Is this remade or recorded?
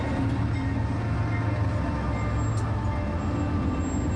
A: recorded